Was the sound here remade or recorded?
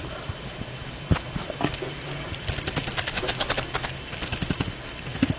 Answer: recorded